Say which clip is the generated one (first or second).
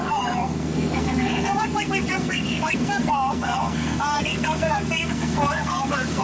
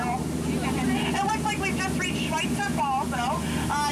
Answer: first